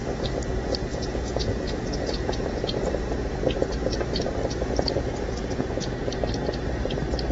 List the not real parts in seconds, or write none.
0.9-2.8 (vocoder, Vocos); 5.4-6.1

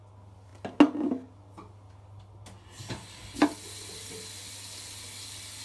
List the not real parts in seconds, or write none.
none

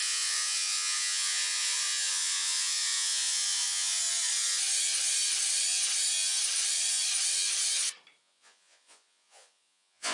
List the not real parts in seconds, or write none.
0.0-4.0 (vocoder, Vocos); 8.2-10.1

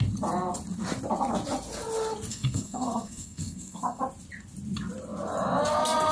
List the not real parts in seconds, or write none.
2.3-4.0 (codec, SNAC)

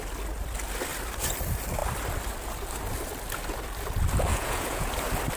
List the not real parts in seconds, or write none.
4.3-4.9 (vocoder, Vocos)

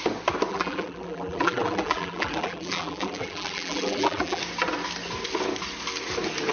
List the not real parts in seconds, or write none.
0.5-4.4 (vocoder, BigVGAN v2)

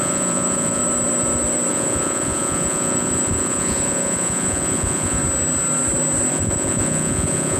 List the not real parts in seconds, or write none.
0.0-0.8 (vocoder, Vocos); 1.7-5.2; 6.3-7.6

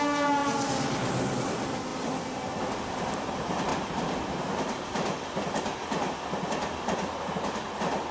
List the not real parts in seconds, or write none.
1.9-2.6 (vocoder, BigVGAN v2); 3.7-7.3